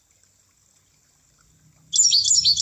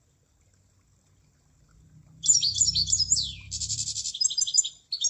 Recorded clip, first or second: first